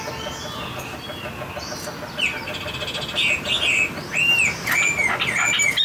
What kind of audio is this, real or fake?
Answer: real